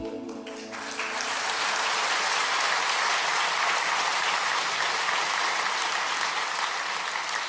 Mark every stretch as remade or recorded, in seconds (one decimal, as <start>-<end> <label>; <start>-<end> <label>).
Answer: 0.0-4.1 recorded; 4.1-4.7 remade; 4.7-7.5 recorded